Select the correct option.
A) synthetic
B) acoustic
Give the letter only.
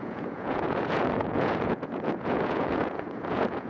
A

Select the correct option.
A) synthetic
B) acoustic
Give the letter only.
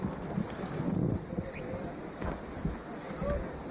B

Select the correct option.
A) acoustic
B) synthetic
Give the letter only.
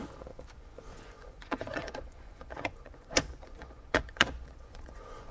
B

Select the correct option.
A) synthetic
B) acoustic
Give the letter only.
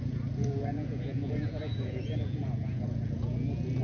A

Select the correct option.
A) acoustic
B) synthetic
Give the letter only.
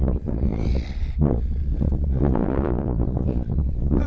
B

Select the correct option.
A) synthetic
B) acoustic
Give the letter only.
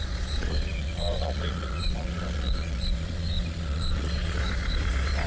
A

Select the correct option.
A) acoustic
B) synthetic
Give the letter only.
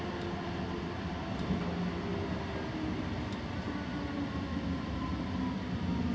A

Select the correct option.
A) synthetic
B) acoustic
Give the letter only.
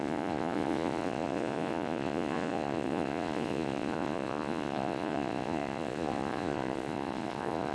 A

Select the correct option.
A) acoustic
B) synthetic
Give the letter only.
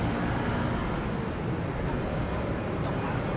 A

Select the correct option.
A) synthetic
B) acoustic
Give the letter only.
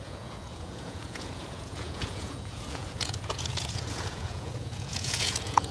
A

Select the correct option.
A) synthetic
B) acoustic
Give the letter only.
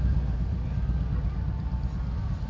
B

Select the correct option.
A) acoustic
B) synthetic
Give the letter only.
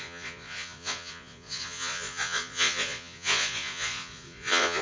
B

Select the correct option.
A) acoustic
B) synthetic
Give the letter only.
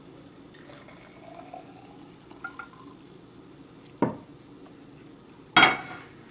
A